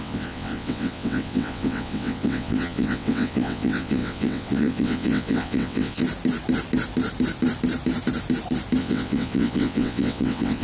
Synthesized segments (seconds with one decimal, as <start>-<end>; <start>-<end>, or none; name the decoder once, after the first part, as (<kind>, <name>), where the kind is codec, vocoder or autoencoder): 0.0-6.0 (vocoder, WaveNeXt); 8.8-10.6